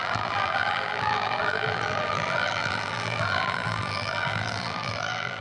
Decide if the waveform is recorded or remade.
remade